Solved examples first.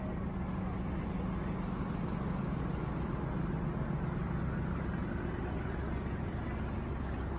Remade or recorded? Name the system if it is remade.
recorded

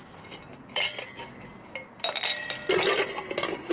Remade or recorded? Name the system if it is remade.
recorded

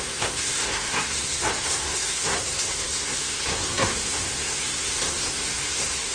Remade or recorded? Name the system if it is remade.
remade, codec, SNAC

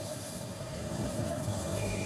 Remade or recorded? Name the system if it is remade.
remade, codec, SNAC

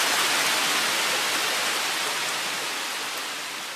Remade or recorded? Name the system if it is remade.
recorded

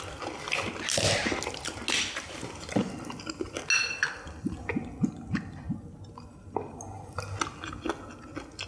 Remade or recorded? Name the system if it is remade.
recorded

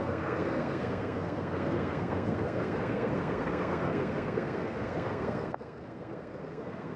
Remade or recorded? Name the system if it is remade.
remade, codec, SNAC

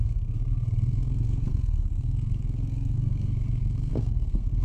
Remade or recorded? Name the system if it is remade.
remade, codec, SNAC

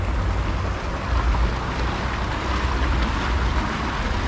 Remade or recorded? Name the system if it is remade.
recorded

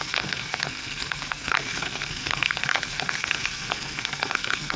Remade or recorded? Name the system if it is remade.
remade, codec, SNAC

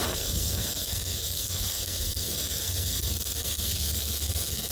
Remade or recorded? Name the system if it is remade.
remade, codec, SNAC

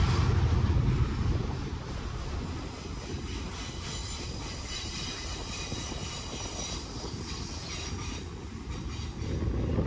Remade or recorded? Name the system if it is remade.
recorded